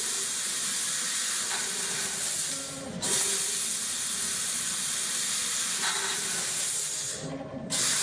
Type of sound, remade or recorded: recorded